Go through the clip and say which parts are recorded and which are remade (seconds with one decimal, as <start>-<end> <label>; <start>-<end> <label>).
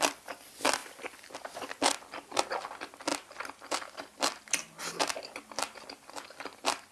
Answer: 0.0-6.9 recorded